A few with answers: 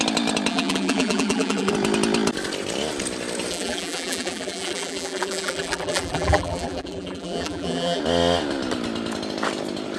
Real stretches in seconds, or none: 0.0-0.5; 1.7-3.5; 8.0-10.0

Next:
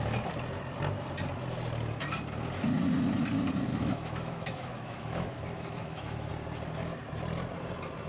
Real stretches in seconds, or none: 0.0-3.7; 6.3-8.1

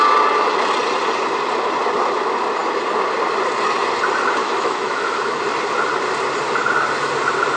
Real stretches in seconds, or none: 0.0-4.4; 5.4-7.6